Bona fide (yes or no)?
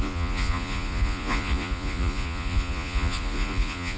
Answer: no